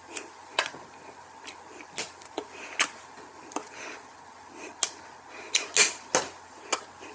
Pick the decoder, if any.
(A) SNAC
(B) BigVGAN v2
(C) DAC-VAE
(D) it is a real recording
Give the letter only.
D